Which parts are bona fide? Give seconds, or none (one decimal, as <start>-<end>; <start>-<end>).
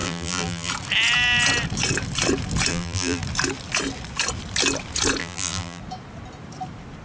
0.7-2.7; 3.2-5.2; 5.8-7.0